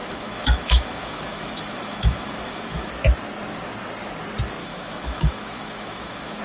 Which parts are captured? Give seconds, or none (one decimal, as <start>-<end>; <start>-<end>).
2.9-4.6